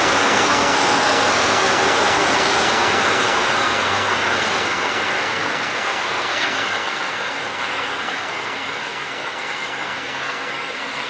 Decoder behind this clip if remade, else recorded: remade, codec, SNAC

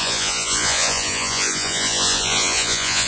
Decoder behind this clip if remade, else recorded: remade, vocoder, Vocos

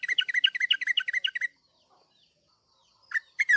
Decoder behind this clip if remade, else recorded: recorded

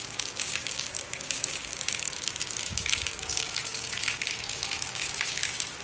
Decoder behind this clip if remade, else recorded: remade, codec, DAC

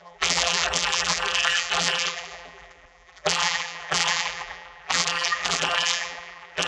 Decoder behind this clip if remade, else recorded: remade, vocoder, BigVGAN v2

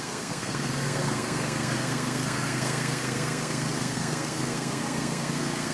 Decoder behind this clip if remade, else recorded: remade, codec, SNAC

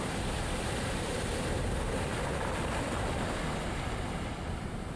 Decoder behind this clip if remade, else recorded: recorded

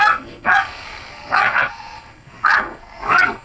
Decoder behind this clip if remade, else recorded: remade, codec, SNAC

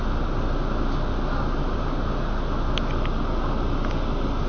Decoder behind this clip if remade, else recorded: recorded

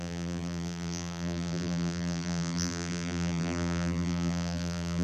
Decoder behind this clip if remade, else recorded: remade, vocoder, BigVGAN v2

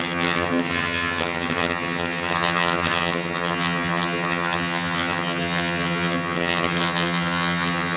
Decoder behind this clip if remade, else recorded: remade, vocoder, HiFi-GAN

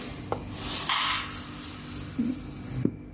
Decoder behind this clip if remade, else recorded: recorded